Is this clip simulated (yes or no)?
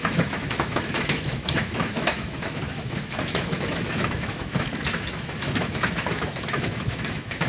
yes